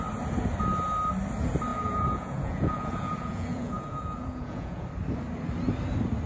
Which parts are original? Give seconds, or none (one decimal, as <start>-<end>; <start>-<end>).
0.0-1.7; 4.9-6.3